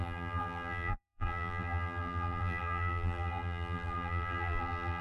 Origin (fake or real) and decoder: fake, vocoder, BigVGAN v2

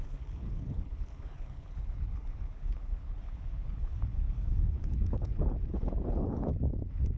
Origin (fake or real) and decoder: fake, codec, HILCodec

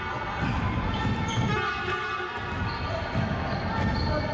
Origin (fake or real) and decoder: real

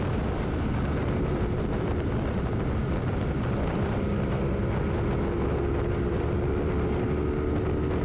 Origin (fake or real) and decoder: real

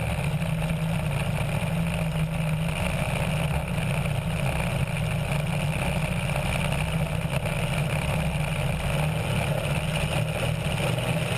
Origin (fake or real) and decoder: real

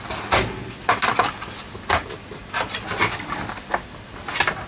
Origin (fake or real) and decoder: real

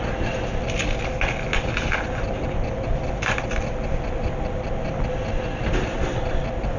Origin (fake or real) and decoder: real